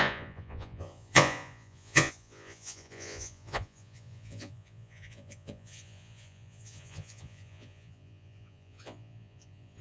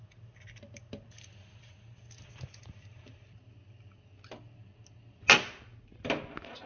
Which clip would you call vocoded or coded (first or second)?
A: first